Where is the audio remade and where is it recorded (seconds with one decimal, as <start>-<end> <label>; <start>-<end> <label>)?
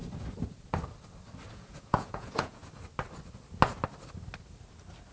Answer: 0.0-1.5 recorded; 1.5-2.6 remade; 2.6-5.1 recorded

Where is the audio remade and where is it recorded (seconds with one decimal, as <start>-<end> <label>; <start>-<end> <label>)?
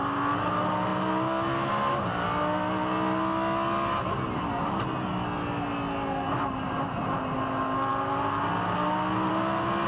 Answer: 0.0-9.9 recorded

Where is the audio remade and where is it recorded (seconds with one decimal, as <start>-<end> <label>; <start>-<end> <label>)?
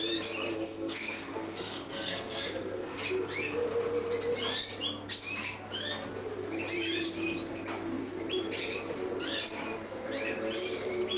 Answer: 0.0-0.5 recorded; 0.5-3.0 remade; 3.0-11.2 recorded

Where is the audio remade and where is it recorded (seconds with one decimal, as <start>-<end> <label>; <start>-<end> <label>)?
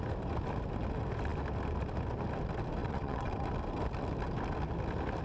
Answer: 0.0-2.8 recorded; 2.8-3.3 remade; 3.3-5.2 recorded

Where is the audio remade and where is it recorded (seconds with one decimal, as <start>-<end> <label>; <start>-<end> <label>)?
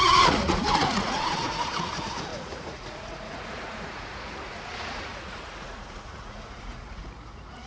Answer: 0.0-7.7 remade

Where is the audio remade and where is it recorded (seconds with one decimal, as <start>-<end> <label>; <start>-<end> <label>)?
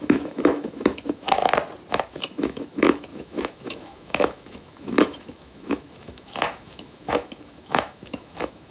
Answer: 0.0-1.4 remade; 1.4-1.9 recorded; 1.9-8.7 remade